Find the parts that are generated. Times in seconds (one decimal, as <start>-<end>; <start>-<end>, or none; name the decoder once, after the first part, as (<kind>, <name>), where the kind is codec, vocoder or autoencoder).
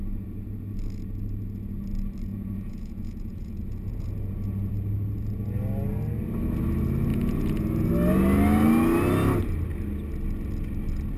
2.3-4.7 (vocoder, Vocos); 7.1-7.9